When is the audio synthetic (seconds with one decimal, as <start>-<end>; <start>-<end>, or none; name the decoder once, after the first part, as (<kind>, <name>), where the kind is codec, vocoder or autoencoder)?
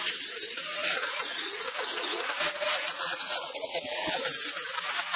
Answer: 0.8-3.9 (vocoder, Vocos)